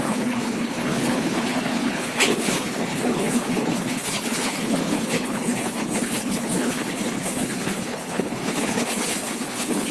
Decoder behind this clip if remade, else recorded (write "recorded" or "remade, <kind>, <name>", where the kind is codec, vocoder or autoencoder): remade, codec, HILCodec